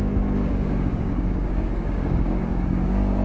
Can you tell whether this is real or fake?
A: fake